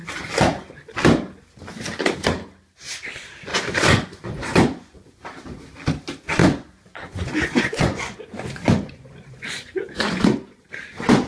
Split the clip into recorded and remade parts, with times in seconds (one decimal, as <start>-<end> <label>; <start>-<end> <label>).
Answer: 0.0-3.5 recorded; 3.5-5.1 remade; 5.1-6.4 recorded; 6.4-11.3 remade